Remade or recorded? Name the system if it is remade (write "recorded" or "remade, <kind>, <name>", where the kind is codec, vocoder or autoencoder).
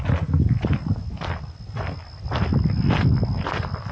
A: recorded